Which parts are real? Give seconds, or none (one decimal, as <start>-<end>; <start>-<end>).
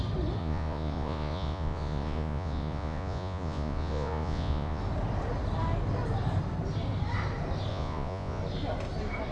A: 0.0-0.4; 4.8-7.7; 8.4-9.3